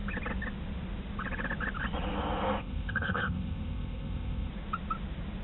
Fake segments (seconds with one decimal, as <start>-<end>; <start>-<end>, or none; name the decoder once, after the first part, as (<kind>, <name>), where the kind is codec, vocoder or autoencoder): 2.6-4.5 (codec, ZipCodec)